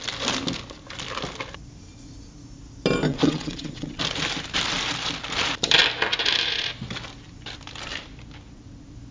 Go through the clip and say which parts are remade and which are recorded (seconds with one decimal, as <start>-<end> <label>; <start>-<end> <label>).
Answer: 0.0-3.1 recorded; 3.1-4.0 remade; 4.0-9.1 recorded